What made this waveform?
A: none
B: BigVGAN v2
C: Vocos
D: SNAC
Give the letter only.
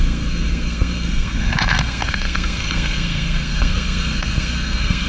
D